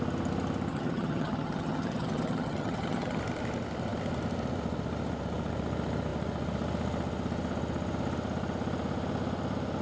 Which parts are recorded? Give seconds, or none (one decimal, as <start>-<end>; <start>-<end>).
0.0-0.7; 3.2-9.8